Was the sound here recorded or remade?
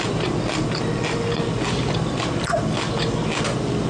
recorded